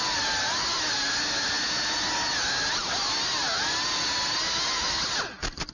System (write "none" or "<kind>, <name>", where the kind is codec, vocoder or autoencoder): none